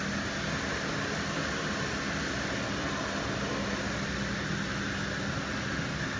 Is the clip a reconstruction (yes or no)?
no